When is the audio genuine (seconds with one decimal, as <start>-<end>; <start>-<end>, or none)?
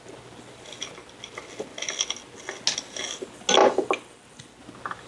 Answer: 0.0-5.1